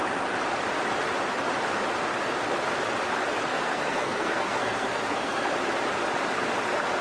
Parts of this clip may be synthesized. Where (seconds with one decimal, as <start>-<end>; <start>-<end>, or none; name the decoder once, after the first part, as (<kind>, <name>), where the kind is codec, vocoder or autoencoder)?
3.5-5.5 (codec, SNAC)